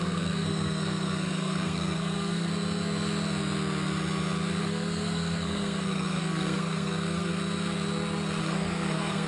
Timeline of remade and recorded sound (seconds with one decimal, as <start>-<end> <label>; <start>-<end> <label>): 0.0-2.5 remade; 2.5-4.6 recorded; 4.6-7.3 remade; 7.3-8.4 recorded; 8.4-9.3 remade